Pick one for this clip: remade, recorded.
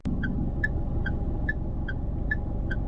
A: recorded